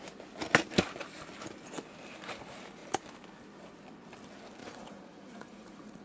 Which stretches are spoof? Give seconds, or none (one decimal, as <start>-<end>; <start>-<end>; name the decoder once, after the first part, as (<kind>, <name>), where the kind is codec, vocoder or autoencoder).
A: 4.6-6.0 (vocoder, Vocos)